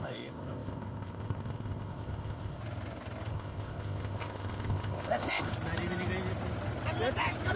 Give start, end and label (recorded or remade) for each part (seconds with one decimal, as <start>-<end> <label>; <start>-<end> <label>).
0.0-2.6 remade; 2.6-3.3 recorded; 3.3-5.5 remade; 5.5-7.6 recorded